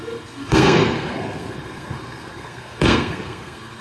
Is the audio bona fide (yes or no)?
no